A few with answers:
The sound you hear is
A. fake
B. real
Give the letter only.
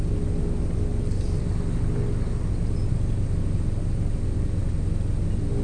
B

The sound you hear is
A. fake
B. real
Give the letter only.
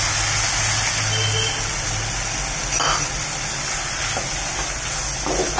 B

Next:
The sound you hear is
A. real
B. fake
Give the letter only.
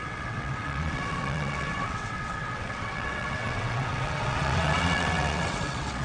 B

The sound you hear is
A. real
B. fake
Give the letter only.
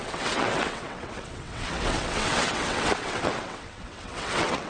B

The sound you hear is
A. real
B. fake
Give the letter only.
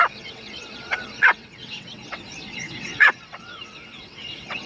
B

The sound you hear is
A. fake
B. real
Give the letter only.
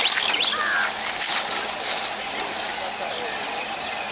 B